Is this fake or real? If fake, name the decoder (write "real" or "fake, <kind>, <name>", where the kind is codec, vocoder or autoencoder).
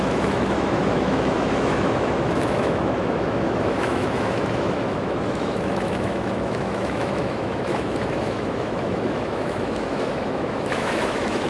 fake, autoencoder, DAC-VAE